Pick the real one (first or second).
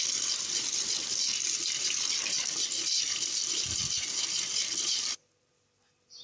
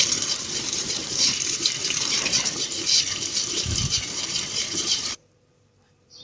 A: first